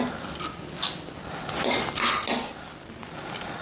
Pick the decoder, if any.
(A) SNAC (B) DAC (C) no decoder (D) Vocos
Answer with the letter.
C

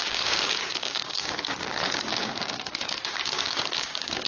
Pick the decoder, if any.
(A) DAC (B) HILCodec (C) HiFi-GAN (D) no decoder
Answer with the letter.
A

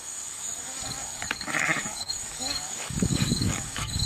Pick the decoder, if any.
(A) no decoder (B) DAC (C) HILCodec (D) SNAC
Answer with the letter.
B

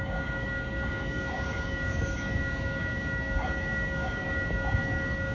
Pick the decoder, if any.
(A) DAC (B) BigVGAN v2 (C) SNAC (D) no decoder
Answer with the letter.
A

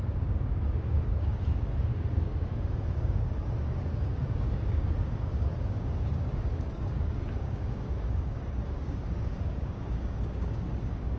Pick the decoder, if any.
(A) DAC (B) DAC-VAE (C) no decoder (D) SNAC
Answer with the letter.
A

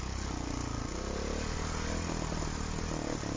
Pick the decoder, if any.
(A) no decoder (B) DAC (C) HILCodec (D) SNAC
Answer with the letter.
A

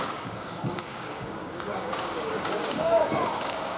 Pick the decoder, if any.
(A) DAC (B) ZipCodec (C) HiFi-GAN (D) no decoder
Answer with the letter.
A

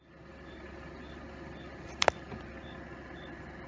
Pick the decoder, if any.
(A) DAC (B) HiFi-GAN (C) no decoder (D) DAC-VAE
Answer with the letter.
C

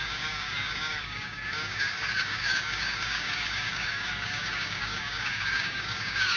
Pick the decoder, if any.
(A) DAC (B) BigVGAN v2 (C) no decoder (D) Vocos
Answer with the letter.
A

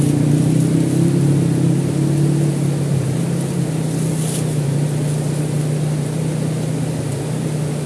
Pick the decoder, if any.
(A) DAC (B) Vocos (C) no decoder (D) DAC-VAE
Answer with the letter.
C